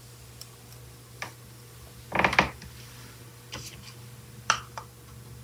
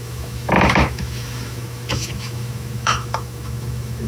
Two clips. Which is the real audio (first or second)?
first